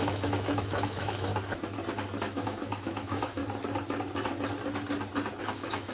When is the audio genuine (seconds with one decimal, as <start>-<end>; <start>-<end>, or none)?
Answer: 1.3-2.2; 3.4-5.4